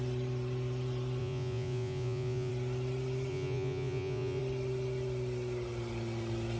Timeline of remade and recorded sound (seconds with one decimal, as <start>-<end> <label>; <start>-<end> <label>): 0.0-1.2 recorded; 1.2-2.5 remade; 2.5-3.3 recorded; 3.3-4.4 remade; 4.4-6.6 recorded